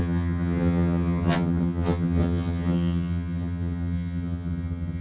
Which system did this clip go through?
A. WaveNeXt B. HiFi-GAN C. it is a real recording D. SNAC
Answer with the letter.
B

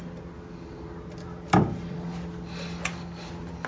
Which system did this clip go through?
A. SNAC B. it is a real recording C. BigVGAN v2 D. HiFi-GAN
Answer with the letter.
B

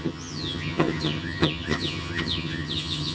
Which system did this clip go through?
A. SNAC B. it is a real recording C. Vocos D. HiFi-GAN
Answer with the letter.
D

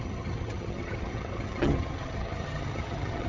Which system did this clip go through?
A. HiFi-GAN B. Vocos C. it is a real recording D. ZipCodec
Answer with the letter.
A